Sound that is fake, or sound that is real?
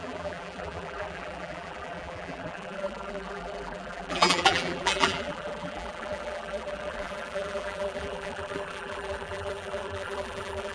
fake